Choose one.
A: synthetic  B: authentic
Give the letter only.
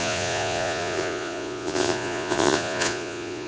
A